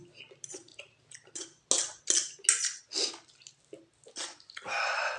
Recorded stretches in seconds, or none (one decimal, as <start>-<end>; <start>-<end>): 0.0-5.2